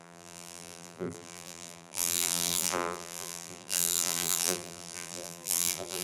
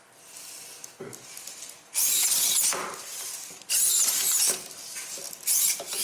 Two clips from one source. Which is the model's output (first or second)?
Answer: first